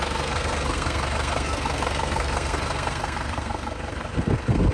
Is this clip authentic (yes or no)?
no